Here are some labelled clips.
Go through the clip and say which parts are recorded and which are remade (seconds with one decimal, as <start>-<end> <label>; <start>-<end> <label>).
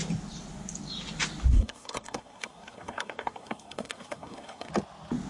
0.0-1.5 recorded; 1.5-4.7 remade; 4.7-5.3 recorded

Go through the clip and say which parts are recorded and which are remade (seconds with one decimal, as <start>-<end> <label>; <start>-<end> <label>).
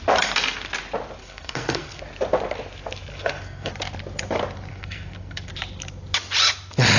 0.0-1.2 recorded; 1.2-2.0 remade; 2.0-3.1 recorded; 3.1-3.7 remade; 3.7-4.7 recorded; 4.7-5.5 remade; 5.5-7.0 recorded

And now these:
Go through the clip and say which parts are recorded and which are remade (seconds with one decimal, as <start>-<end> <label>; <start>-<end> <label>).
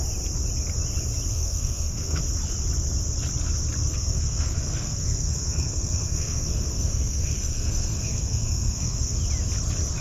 0.0-1.3 recorded; 1.3-2.2 remade; 2.2-3.9 recorded; 3.9-9.2 remade; 9.2-10.0 recorded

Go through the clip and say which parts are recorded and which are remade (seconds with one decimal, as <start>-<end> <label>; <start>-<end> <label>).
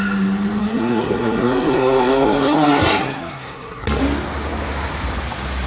0.0-0.6 recorded; 0.6-4.0 remade; 4.0-5.7 recorded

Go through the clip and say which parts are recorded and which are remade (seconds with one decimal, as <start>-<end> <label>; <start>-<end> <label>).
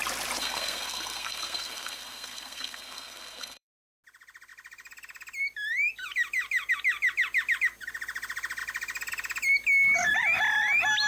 0.0-0.4 recorded; 0.4-4.0 remade; 4.0-11.1 recorded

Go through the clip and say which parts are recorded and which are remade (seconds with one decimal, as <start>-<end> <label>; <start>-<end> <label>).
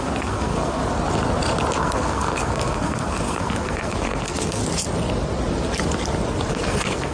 0.0-0.8 remade; 0.8-1.8 recorded; 1.8-4.6 remade; 4.6-6.5 recorded; 6.5-7.1 remade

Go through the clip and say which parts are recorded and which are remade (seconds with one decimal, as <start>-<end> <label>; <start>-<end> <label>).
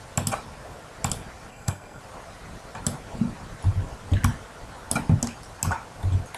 0.0-1.5 recorded; 1.5-2.0 remade; 2.0-6.4 recorded